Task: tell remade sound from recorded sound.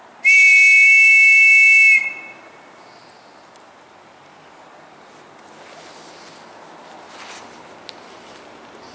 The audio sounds recorded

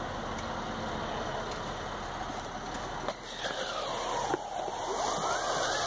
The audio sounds recorded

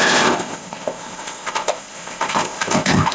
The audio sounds remade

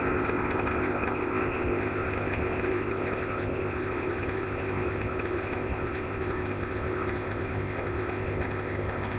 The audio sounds remade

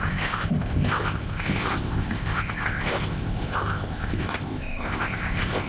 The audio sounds remade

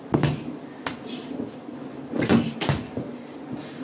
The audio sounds recorded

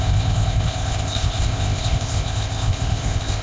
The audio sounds remade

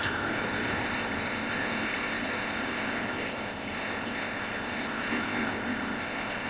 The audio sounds remade